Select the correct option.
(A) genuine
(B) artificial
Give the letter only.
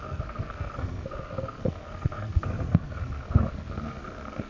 B